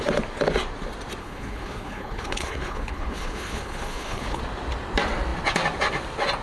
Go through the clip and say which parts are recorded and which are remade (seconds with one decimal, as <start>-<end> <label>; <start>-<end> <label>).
0.0-1.2 recorded; 1.2-4.4 remade; 4.4-6.4 recorded